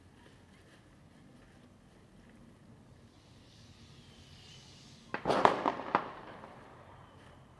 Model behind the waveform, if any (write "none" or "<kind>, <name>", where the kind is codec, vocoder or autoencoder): none